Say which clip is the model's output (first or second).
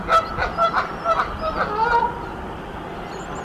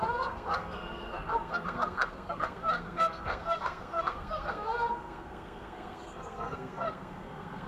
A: second